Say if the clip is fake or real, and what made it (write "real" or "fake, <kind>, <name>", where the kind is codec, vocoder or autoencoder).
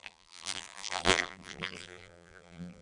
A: fake, vocoder, BigVGAN v2